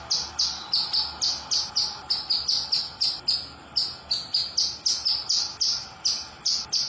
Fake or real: real